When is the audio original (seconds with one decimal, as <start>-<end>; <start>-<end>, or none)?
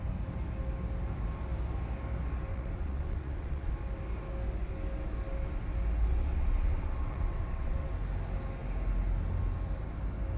0.0-2.5; 3.7-6.1; 7.9-10.4